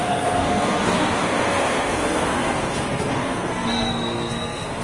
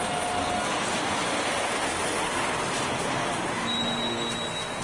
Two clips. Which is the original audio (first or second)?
second